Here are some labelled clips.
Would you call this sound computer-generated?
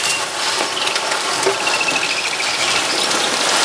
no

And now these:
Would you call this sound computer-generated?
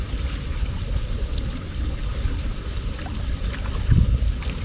no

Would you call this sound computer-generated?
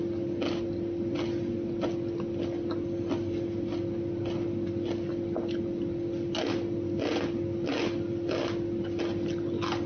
no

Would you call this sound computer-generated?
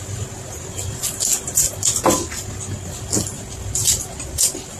no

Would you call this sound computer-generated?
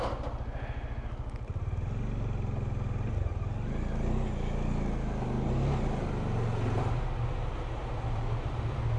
no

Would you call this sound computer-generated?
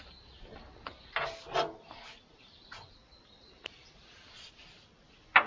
no